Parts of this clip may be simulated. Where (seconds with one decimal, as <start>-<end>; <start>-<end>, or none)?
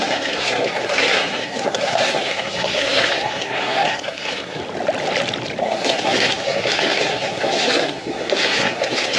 0.0-4.6; 5.6-9.2